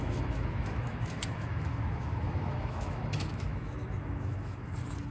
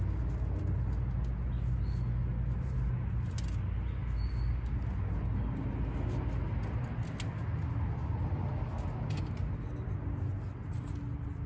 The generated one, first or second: first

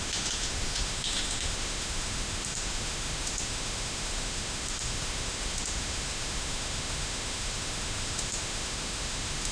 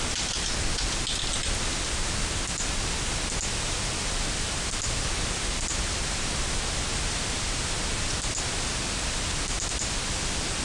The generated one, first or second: first